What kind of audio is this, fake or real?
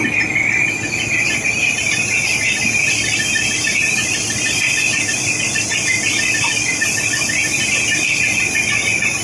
real